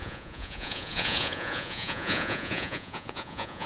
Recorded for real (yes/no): no